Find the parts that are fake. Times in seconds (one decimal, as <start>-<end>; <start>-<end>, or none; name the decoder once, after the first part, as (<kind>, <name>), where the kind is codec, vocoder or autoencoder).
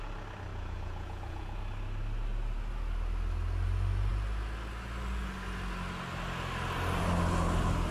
0.5-1.6 (vocoder, Vocos)